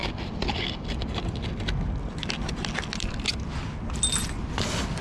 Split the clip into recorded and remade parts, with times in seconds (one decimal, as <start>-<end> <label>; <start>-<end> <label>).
0.0-5.0 recorded